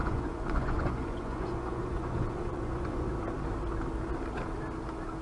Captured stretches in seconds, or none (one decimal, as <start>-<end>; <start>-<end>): 3.1-5.2